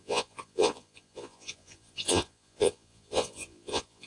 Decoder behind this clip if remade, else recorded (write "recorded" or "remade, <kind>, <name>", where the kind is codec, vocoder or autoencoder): remade, vocoder, Vocos